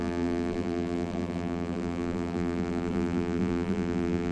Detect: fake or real fake